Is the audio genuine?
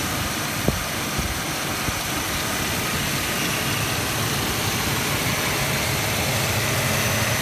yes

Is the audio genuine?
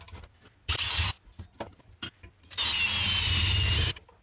yes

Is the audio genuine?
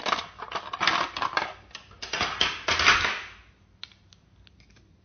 yes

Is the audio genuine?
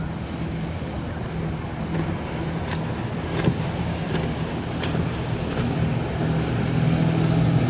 yes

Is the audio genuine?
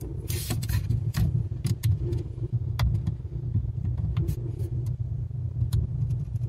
yes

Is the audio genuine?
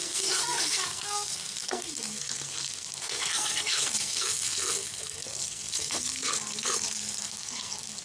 no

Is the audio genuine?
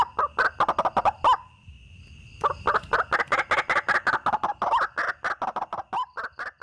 yes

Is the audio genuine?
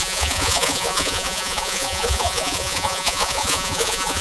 no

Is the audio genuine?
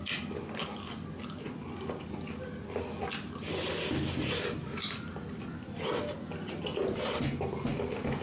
yes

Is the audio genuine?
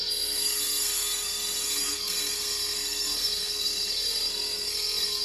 no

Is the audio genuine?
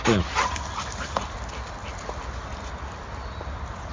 yes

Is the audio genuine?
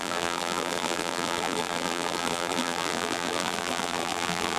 no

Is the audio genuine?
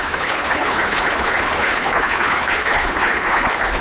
no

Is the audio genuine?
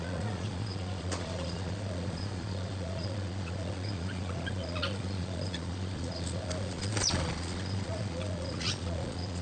no